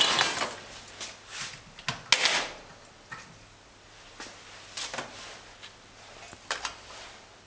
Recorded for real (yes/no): yes